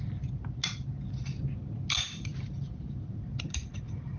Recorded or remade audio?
recorded